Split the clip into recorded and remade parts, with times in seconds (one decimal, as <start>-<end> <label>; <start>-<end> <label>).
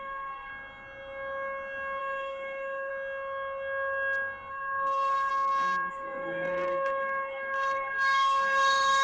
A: 0.0-0.5 remade; 0.5-2.0 recorded; 2.0-2.9 remade; 2.9-4.5 recorded; 4.5-5.3 remade; 5.3-5.9 recorded; 5.9-9.0 remade